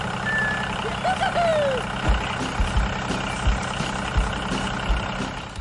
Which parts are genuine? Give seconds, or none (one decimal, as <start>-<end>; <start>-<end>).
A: 1.5-4.9